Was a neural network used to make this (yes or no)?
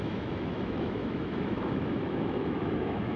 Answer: yes